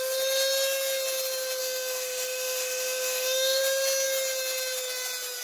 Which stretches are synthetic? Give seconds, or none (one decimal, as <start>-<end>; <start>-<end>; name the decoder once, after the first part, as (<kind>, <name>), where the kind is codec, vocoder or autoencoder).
1.6-3.6 (autoencoder, DAC-VAE)